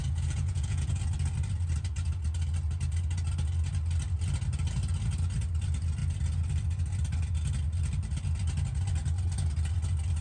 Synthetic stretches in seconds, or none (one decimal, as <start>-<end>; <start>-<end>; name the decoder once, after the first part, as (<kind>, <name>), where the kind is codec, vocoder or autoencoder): 0.0-1.0 (vocoder, Vocos)